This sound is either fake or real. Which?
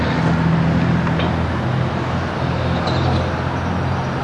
real